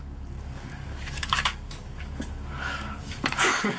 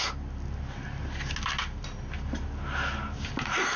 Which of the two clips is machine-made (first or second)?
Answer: first